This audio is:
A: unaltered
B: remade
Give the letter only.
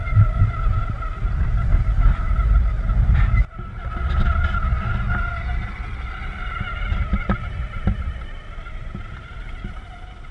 A